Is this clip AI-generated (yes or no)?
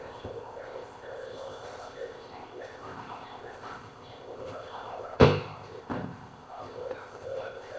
yes